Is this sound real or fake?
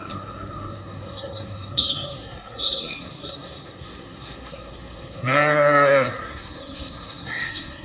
fake